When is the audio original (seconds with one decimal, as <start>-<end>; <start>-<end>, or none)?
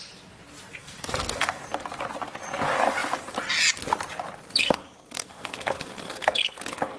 0.0-0.8; 1.6-4.6; 6.6-7.0